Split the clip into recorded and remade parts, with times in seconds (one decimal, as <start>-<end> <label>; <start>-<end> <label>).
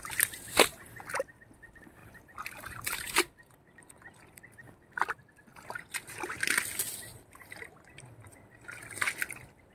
0.0-2.0 recorded; 2.0-3.1 remade; 3.1-5.5 recorded; 5.5-6.2 remade; 6.2-7.1 recorded; 7.1-7.7 remade; 7.7-9.7 recorded